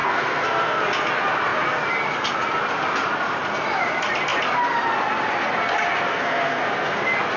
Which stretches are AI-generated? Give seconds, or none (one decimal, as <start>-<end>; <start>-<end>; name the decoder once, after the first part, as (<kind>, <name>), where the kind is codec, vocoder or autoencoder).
0.0-0.8 (codec, SNAC); 6.1-7.0